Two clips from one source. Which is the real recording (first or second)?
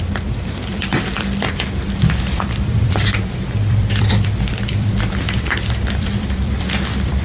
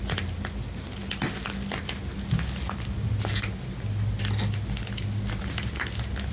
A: second